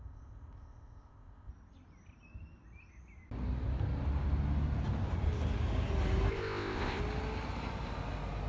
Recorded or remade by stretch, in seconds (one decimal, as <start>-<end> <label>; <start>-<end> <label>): 0.0-1.5 remade; 1.5-6.3 recorded; 6.3-7.0 remade; 7.0-8.5 recorded